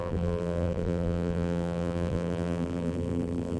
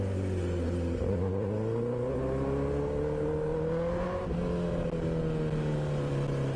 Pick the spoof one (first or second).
first